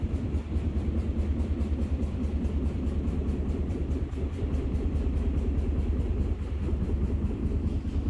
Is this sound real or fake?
fake